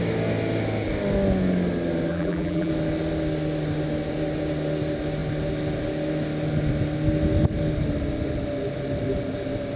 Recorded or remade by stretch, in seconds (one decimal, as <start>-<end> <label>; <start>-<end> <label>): 0.0-2.1 recorded; 2.1-2.7 remade; 2.7-9.8 recorded